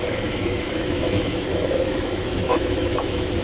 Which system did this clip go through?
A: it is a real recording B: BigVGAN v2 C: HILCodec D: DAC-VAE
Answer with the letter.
D